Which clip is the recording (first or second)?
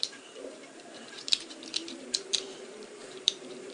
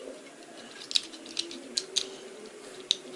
second